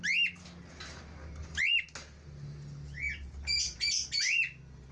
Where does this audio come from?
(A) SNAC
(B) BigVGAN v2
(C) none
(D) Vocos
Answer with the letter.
C